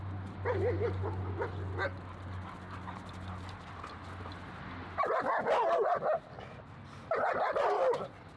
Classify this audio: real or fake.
real